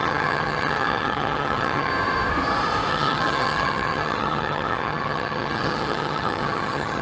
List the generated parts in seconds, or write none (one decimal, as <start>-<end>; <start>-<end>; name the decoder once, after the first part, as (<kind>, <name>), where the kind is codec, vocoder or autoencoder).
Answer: 0.0-1.9 (vocoder, HiFi-GAN); 2.9-7.0